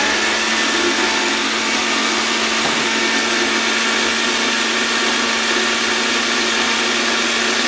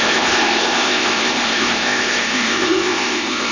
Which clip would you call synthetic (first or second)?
second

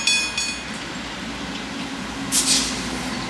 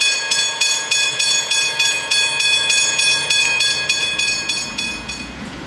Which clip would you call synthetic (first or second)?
second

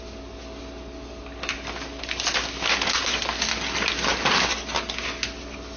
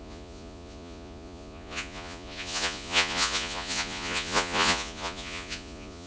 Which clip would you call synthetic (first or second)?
second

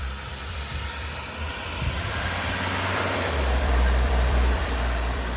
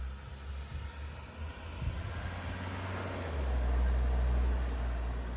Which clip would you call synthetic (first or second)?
first